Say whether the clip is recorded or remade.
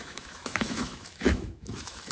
remade